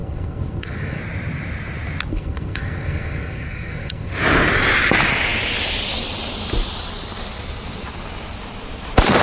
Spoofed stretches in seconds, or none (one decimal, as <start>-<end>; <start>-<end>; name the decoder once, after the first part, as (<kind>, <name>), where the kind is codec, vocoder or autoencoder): 0.0-1.0 (codec, SNAC); 2.1-4.1